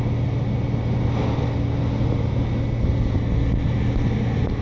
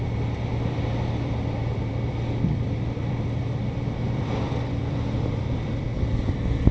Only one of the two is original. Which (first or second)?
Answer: first